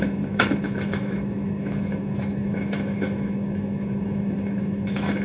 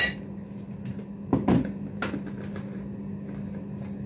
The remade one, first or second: first